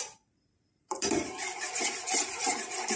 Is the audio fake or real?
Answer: fake